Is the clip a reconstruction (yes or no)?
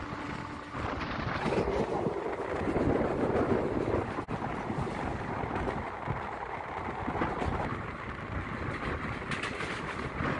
no